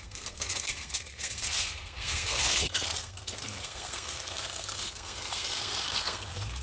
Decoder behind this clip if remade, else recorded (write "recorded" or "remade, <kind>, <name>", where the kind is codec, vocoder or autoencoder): remade, codec, SNAC